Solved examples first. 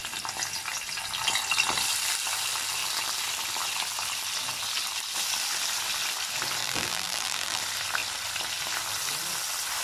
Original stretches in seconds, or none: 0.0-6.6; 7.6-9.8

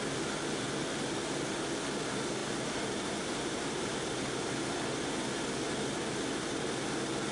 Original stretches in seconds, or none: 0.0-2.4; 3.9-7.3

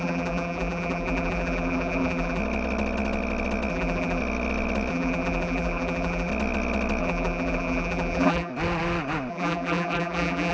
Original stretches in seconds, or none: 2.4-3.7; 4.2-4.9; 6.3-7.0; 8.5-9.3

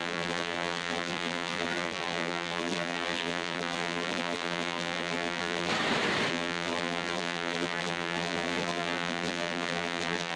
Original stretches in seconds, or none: 5.7-6.3